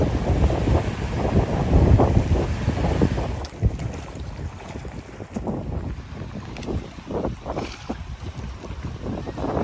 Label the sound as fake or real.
real